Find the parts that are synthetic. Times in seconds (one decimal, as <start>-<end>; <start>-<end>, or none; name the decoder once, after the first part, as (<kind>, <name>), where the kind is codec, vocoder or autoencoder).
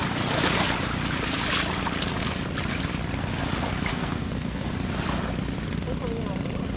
3.9-4.7 (codec, SNAC)